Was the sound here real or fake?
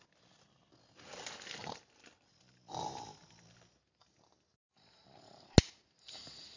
real